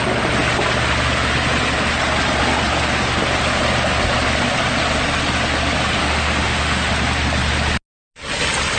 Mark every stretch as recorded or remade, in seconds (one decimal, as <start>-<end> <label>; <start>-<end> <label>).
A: 0.0-6.0 recorded; 6.0-6.9 remade; 6.9-8.8 recorded